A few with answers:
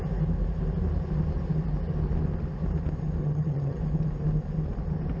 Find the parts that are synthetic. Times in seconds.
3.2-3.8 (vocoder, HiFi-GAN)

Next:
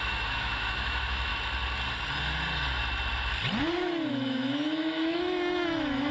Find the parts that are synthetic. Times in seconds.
0.0-1.3 (autoencoder, DAC-VAE); 4.1-6.1

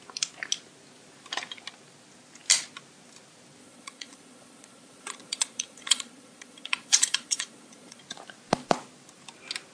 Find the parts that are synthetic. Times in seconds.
3.6-8.0 (vocoder, Vocos)

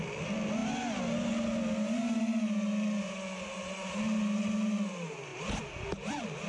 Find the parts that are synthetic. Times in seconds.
none

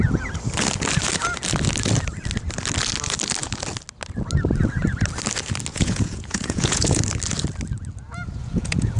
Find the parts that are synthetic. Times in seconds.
5.7-7.0 (vocoder, Vocos); 8.4-9.0

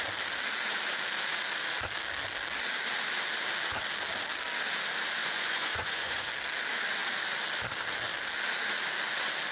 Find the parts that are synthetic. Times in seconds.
5.2-6.3 (vocoder, Vocos)

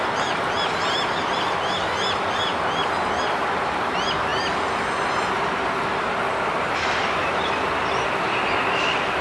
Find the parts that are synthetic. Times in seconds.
none